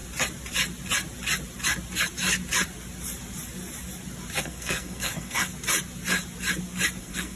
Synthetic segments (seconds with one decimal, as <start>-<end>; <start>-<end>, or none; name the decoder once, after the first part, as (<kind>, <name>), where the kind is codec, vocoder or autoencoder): 4.4-5.5 (codec, SNAC); 7.0-7.4